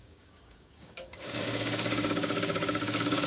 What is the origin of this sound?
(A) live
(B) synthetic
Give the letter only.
B